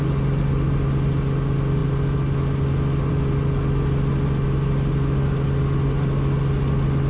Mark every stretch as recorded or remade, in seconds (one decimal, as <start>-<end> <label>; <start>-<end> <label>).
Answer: 0.0-7.1 recorded

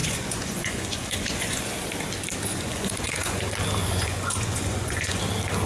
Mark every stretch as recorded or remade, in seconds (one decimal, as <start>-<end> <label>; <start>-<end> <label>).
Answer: 0.0-1.7 remade; 1.7-2.5 recorded; 2.5-3.4 remade; 3.4-3.8 recorded; 3.8-5.2 remade; 5.2-5.7 recorded

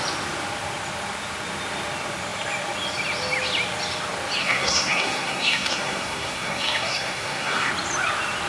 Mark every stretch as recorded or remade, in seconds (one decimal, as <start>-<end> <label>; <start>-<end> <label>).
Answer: 0.0-4.4 recorded; 4.4-7.7 remade; 7.7-8.5 recorded

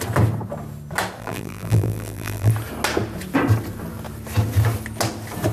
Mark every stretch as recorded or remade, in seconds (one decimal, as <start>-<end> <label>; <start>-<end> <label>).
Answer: 0.0-1.2 recorded; 1.2-2.5 remade; 2.5-5.5 recorded